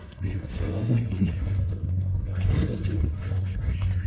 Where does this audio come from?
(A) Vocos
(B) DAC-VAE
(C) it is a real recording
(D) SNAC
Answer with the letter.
D